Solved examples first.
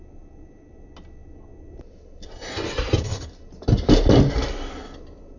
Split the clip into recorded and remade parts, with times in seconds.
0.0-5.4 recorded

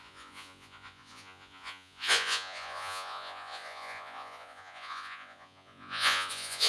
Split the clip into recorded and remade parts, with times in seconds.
0.0-6.7 remade

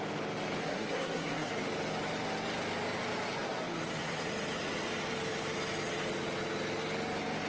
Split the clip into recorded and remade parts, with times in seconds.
0.0-0.6 recorded; 0.6-1.5 remade; 1.5-7.5 recorded